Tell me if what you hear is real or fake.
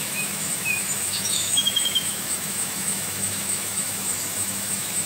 fake